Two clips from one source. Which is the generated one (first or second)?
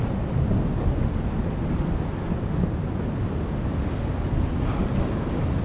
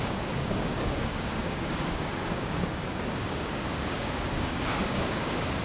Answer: second